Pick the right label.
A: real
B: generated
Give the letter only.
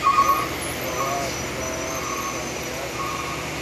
A